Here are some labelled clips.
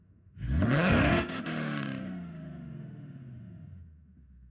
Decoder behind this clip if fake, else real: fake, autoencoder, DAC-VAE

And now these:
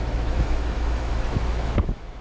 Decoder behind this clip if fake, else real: fake, autoencoder, DAC-VAE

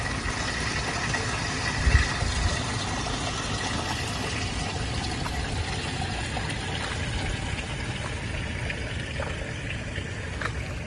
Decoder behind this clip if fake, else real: real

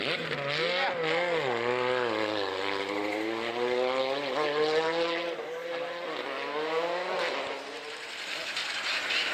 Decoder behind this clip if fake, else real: real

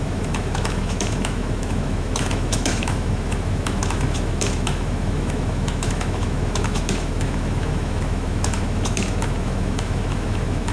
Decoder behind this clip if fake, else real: fake, autoencoder, DAC-VAE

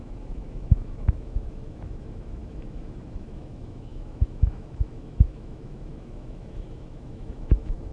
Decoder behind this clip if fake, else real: fake, autoencoder, DAC-VAE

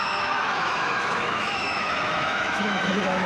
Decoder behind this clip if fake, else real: fake, autoencoder, DAC-VAE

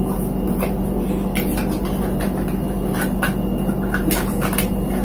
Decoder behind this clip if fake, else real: real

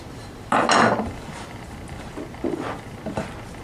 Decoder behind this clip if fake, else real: real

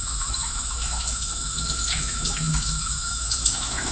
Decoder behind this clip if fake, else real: fake, autoencoder, DAC-VAE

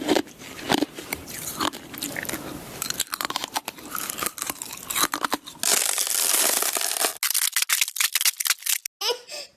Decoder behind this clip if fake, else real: real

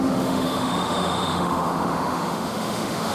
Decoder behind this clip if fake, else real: fake, autoencoder, DAC-VAE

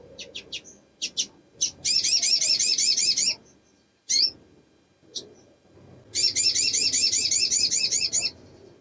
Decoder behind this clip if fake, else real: real